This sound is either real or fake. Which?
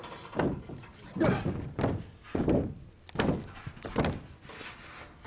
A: real